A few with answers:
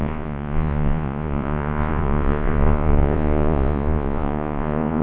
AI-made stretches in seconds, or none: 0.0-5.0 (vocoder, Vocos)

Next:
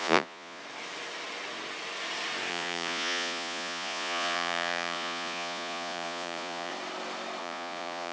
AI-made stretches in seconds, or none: 0.0-0.6 (vocoder, Vocos); 2.5-6.7; 7.4-8.1

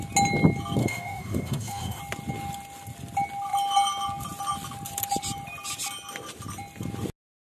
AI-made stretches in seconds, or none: 0.8-2.0 (autoencoder, DAC-VAE)

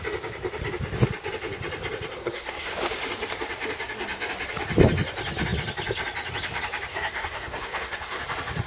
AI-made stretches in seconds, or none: 2.2-2.7 (codec, SNAC); 6.9-8.2

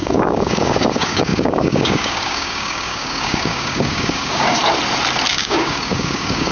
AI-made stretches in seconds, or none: 0.0-4.6 (codec, DAC); 5.3-6.5

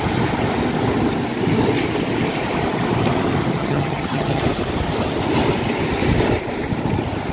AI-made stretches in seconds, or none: 3.6-4.4 (vocoder, HiFi-GAN)

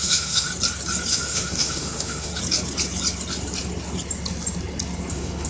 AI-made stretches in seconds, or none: 0.0-0.5 (autoencoder, DAC-VAE); 1.1-2.3; 5.1-5.5